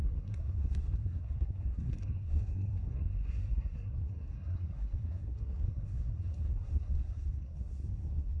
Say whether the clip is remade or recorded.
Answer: remade